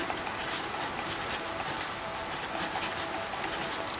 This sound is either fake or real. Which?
real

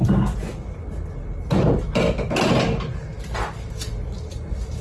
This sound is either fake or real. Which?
real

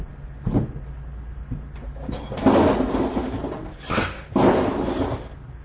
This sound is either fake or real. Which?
real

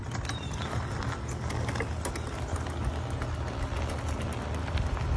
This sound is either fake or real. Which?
real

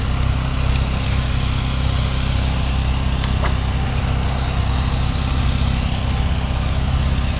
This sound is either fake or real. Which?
real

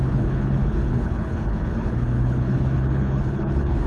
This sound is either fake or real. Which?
fake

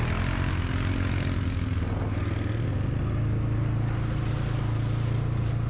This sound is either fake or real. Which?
real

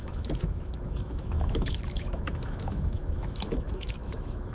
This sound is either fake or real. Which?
fake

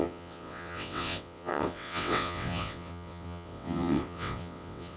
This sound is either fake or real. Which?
fake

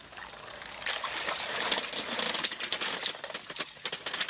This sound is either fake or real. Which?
real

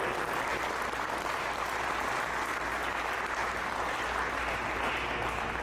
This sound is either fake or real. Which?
real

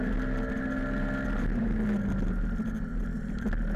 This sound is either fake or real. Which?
real